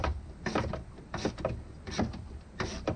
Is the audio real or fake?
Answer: real